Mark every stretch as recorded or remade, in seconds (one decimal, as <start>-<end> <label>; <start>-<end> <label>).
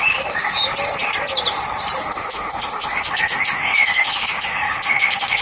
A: 0.0-2.0 recorded; 2.0-5.4 remade